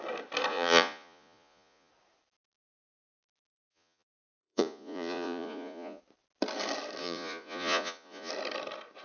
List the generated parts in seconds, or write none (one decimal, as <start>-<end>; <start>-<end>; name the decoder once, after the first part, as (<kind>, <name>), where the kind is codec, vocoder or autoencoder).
0.5-1.9 (vocoder, Vocos); 3.5-6.0; 7.0-8.3